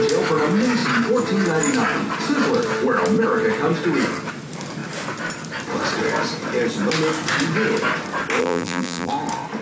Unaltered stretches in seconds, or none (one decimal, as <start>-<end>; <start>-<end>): 0.0-8.4; 9.1-9.6